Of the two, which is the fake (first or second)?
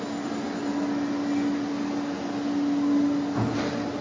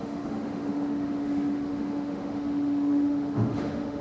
second